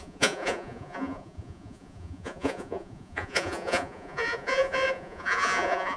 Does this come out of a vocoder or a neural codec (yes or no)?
yes